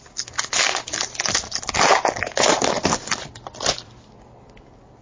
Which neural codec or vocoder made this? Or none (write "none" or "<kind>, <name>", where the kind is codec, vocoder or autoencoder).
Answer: none